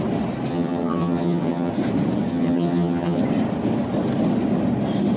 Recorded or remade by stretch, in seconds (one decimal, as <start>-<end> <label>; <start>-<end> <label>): 0.0-0.5 recorded; 0.5-1.7 remade; 1.7-2.3 recorded; 2.3-3.2 remade; 3.2-5.2 recorded